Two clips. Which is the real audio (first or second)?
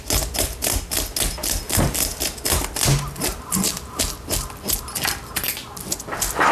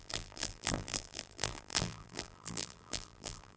first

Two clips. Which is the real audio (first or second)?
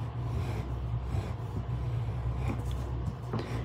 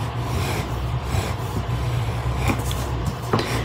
first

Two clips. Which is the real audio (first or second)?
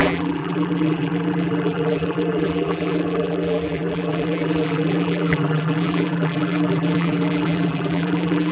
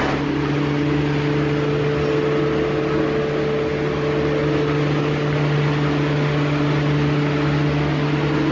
second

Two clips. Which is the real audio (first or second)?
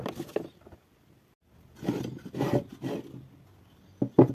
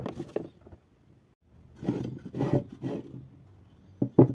second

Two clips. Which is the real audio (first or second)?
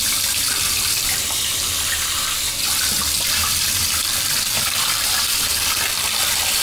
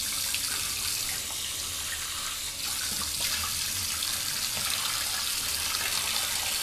second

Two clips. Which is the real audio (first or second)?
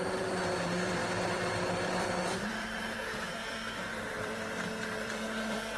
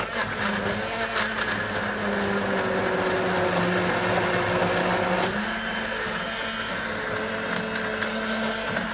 second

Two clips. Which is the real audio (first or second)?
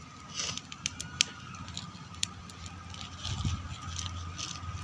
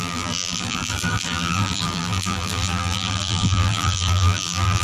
first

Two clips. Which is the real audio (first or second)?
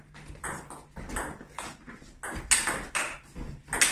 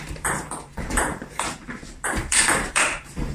first